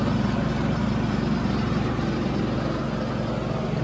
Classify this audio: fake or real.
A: real